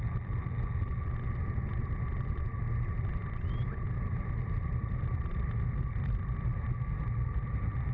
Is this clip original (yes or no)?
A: yes